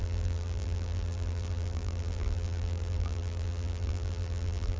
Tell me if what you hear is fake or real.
fake